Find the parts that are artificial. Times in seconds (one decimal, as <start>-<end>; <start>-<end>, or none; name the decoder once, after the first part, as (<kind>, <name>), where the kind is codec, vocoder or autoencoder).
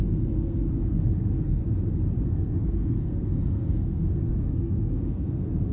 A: 0.0-1.6 (codec, SNAC); 2.3-5.7